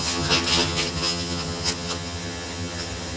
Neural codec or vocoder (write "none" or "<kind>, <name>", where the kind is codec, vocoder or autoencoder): vocoder, HiFi-GAN